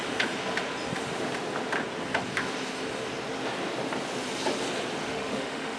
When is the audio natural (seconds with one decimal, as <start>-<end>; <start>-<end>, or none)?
0.0-5.0